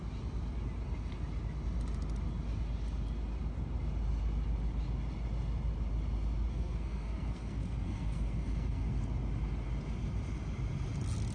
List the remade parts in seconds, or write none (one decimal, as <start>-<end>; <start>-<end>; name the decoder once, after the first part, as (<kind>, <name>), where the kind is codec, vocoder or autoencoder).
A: 6.5-9.0 (codec, SNAC)